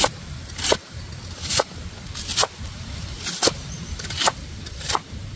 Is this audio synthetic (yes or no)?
yes